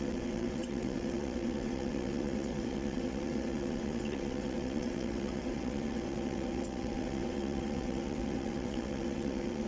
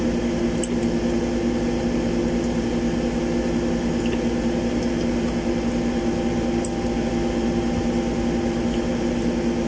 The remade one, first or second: first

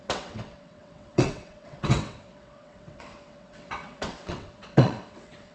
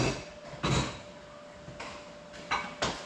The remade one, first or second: first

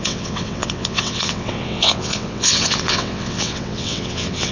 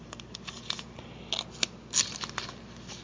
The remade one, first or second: first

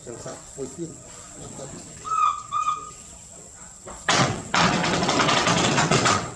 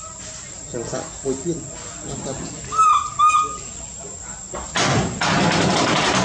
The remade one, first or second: first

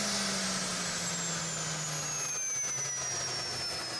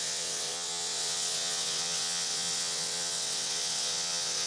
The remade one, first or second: second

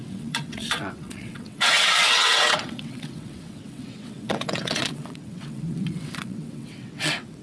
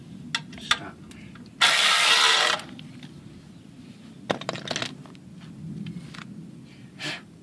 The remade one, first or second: first